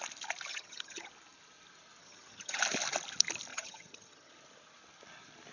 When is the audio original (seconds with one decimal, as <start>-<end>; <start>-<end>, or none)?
0.0-0.5; 1.1-2.0; 2.6-3.5; 4.3-5.5